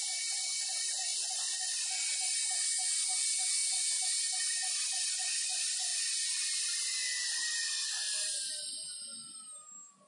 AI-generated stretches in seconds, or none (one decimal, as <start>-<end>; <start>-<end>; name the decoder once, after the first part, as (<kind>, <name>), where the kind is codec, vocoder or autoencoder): none